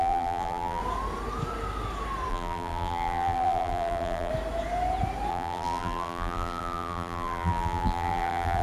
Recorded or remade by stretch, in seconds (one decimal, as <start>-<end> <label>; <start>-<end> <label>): 0.0-0.8 remade; 0.8-2.3 recorded; 2.3-4.3 remade; 4.3-5.3 recorded; 5.3-8.6 remade